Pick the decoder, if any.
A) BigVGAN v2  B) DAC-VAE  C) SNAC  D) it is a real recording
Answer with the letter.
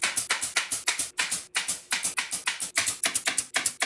D